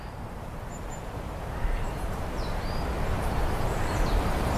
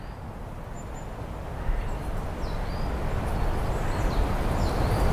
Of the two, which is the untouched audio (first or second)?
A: second